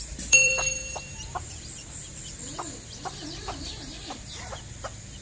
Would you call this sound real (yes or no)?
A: no